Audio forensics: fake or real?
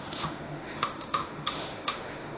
fake